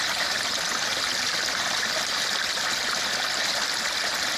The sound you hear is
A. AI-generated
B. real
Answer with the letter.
B